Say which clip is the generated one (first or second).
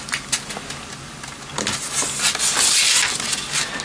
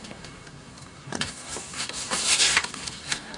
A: second